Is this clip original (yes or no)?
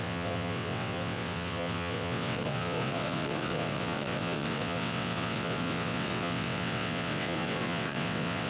no